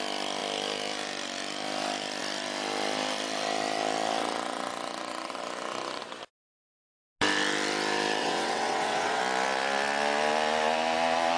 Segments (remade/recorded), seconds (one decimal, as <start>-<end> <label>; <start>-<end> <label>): 0.0-8.2 recorded; 8.2-9.2 remade; 9.2-11.4 recorded